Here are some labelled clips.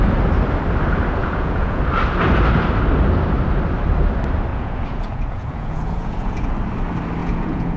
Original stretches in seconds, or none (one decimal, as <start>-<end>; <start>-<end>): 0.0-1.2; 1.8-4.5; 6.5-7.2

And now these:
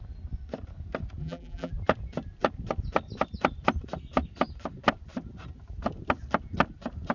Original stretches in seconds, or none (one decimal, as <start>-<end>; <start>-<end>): 0.0-1.2; 1.7-7.1

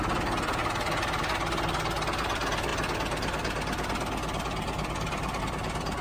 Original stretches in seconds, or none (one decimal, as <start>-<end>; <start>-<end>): 0.0-6.0

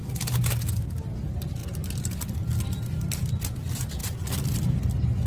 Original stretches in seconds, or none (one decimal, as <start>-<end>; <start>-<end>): 0.0-5.3

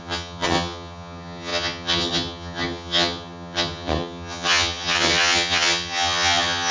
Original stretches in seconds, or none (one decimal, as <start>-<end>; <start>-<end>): none

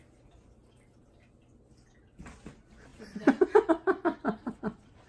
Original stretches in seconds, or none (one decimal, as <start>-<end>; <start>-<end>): 0.0-4.4

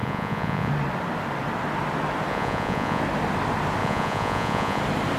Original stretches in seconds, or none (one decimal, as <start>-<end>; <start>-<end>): 0.7-2.3; 3.0-3.8; 4.8-5.2